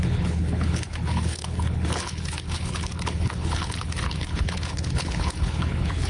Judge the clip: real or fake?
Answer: fake